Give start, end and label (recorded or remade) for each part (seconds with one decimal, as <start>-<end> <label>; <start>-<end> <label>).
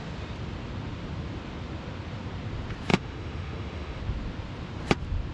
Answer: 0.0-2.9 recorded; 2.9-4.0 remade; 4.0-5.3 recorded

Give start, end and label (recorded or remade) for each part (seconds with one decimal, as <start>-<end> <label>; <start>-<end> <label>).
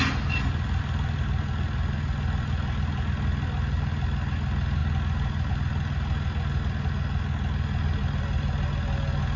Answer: 0.0-9.4 recorded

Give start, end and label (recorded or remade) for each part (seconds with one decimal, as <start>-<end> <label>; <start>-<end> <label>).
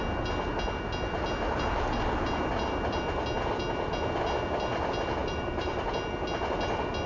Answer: 0.0-5.2 recorded; 5.2-5.9 remade; 5.9-7.1 recorded